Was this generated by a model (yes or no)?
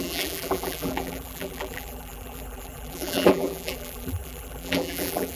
yes